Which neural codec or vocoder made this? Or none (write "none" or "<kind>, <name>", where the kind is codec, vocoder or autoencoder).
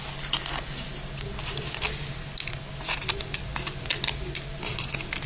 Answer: none